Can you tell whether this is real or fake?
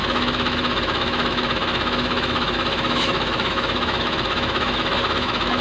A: fake